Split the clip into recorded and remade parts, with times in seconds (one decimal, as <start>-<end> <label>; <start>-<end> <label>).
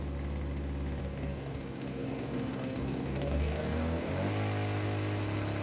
0.0-1.0 recorded; 1.0-4.1 remade; 4.1-5.6 recorded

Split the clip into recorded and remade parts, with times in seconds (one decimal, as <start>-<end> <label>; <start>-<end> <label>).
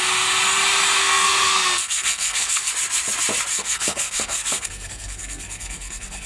0.0-1.0 recorded; 1.0-2.7 remade; 2.7-3.5 recorded; 3.5-6.3 remade